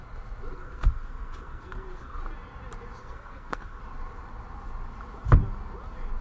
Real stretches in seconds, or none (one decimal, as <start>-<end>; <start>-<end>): 0.0-0.5; 2.2-3.0; 3.8-6.2